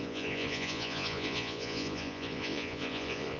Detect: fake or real fake